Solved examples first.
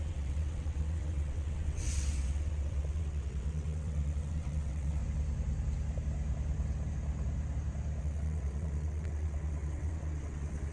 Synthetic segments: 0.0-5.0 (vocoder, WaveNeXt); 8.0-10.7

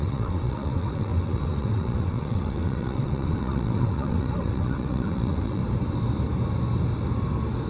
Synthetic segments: 0.0-5.6 (vocoder, WaveNeXt)